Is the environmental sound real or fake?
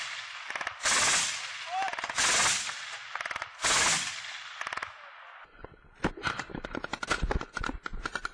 real